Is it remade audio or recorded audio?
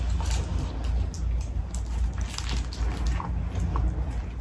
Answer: recorded